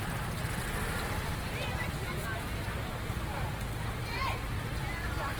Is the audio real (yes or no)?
yes